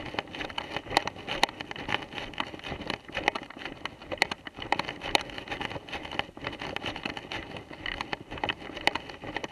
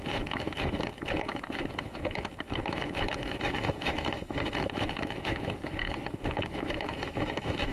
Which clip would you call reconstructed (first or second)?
second